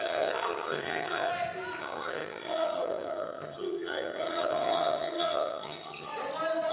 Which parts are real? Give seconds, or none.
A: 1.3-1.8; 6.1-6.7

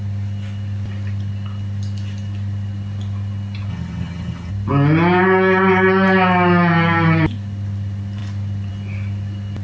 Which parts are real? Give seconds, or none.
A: 0.0-3.7; 4.5-9.6

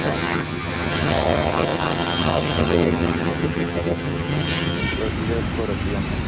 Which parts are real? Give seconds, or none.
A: 4.8-6.3

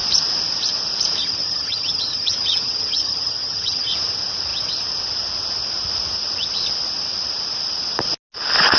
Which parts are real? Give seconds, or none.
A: 0.0-1.2; 3.9-8.8

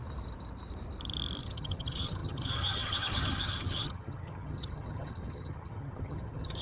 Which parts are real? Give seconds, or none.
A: 0.0-1.4

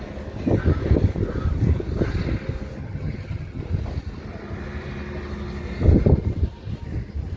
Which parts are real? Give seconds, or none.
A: 0.0-2.8; 3.6-7.4

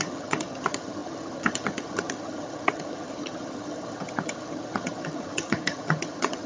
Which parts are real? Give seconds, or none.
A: none